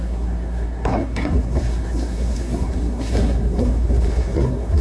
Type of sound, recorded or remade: remade